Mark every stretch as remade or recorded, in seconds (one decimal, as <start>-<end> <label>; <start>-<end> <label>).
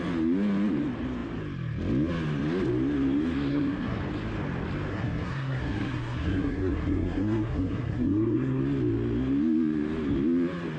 0.0-3.5 recorded; 3.5-4.0 remade; 4.0-4.9 recorded; 4.9-8.6 remade; 8.6-10.8 recorded